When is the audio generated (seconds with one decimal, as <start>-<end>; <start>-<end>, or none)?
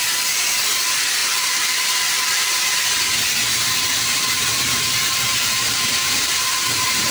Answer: 1.2-2.8; 3.9-7.1